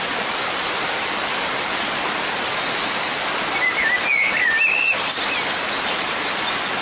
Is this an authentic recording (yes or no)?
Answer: yes